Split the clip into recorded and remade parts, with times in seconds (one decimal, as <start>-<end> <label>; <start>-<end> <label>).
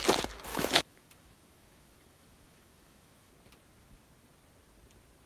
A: 0.0-0.5 recorded; 0.5-3.3 remade; 3.3-5.3 recorded